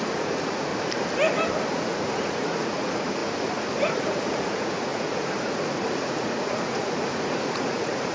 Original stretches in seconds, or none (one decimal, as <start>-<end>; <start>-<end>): 0.7-1.7